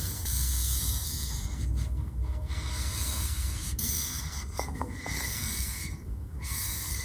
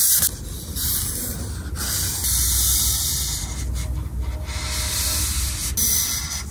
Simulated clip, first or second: first